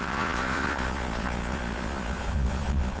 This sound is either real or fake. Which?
fake